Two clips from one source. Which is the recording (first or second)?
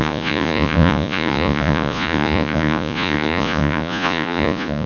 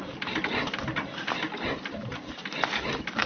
second